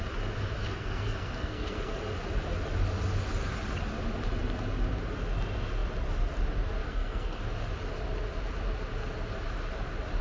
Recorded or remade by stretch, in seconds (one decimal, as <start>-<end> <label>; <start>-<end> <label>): 0.0-0.6 recorded; 0.6-2.0 remade; 2.0-6.8 recorded; 6.8-7.4 remade; 7.4-10.2 recorded